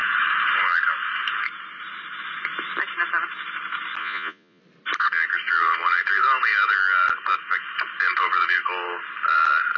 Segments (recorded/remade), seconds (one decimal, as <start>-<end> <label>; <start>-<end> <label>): 0.0-4.0 recorded; 4.0-4.6 remade; 4.6-9.8 recorded